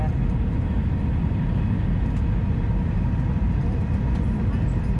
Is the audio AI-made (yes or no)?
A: no